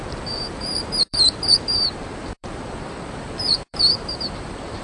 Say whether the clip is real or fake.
fake